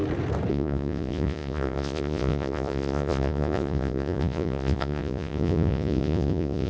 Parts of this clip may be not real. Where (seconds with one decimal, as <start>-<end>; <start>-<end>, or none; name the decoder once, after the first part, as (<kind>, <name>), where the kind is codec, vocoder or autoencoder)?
0.5-6.7 (vocoder, Vocos)